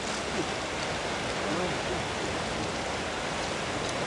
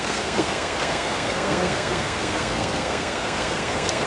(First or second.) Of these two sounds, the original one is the first